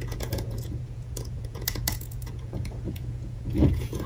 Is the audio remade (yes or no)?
yes